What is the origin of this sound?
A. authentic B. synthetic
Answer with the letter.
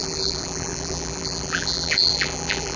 B